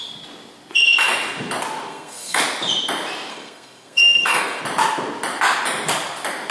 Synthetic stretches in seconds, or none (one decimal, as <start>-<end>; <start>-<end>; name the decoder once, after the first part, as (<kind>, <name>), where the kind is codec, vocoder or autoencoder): 1.9-2.4 (codec, SNAC); 3.3-4.6